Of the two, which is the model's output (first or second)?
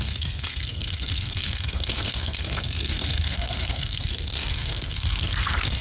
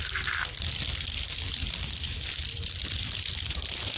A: first